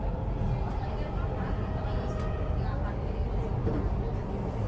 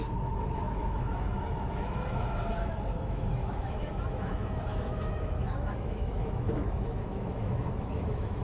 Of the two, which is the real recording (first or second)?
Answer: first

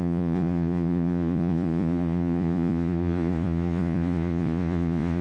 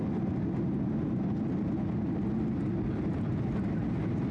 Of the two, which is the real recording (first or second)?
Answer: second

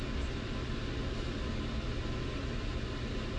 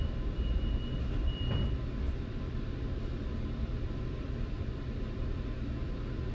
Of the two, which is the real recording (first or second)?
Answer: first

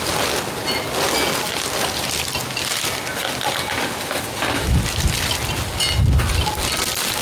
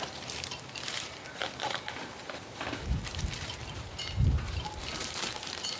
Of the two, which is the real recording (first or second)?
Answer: first